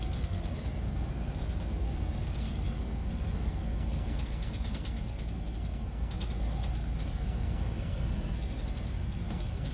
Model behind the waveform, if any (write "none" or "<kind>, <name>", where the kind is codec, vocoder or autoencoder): codec, SNAC